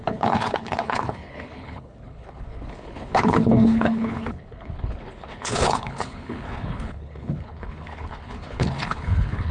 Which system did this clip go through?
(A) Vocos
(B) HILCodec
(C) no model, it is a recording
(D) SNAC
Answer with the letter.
B